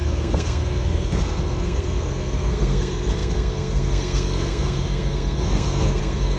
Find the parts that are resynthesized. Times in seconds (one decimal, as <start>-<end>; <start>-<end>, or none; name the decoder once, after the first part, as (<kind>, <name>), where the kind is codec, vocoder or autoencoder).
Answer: 0.0-6.4 (codec, SNAC)